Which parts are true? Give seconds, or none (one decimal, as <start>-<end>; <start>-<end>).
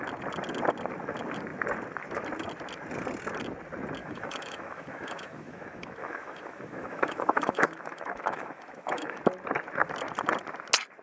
0.0-4.0; 9.2-11.0